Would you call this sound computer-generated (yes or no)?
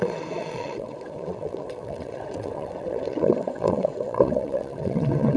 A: yes